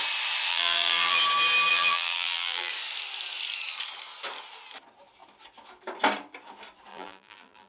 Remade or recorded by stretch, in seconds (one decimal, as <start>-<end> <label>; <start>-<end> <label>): 0.0-0.5 recorded; 0.5-1.2 remade; 1.2-1.7 recorded; 1.7-2.7 remade; 2.7-6.9 recorded; 6.9-7.7 remade

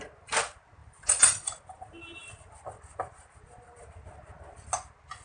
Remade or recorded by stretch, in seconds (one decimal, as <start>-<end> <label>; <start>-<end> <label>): 0.0-0.8 recorded; 0.8-3.9 remade; 3.9-5.2 recorded

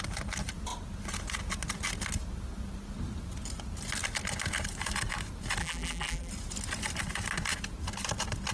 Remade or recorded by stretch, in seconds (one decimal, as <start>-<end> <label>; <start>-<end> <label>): 0.0-5.6 recorded; 5.6-6.3 remade; 6.3-8.5 recorded

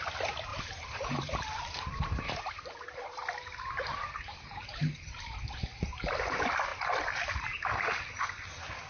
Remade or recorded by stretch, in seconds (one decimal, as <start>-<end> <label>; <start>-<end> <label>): 0.0-0.5 recorded; 0.5-5.4 remade; 5.4-8.9 recorded

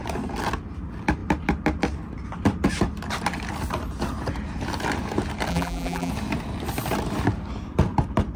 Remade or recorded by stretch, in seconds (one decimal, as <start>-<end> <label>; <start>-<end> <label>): 0.0-5.5 recorded; 5.5-6.1 remade; 6.1-8.4 recorded

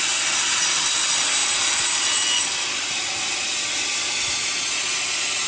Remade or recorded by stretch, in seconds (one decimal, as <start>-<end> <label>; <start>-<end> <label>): 0.0-5.5 recorded

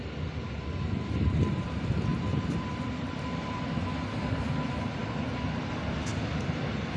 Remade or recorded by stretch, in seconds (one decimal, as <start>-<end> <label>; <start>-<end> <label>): 0.0-2.1 recorded; 2.1-3.6 remade; 3.6-7.0 recorded